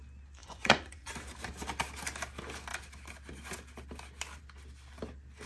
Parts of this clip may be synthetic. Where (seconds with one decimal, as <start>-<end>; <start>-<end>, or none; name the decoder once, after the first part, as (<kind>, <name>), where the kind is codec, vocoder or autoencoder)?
0.4-1.1 (vocoder, Vocos)